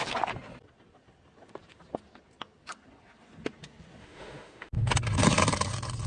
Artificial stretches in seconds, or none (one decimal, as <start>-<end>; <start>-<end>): 4.0-4.9